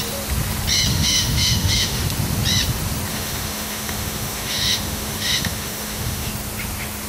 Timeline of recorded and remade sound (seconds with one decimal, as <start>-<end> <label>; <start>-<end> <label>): 0.0-0.9 recorded; 0.9-2.0 remade; 2.0-3.1 recorded; 3.1-6.3 remade; 6.3-7.1 recorded